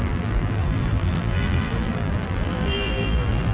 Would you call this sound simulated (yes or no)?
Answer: yes